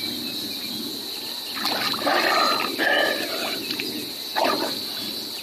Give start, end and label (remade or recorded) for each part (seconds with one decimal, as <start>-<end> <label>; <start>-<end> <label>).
0.0-5.4 recorded